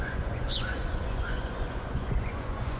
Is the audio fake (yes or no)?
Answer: yes